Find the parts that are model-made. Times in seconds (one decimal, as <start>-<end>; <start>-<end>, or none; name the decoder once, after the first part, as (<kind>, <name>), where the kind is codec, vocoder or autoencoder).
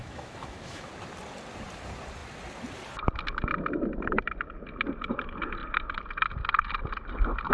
0.0-0.9 (autoencoder, DAC-VAE)